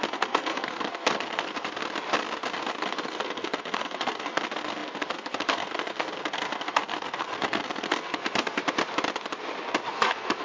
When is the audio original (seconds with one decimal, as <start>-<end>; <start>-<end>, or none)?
1.8-2.8; 8.6-9.9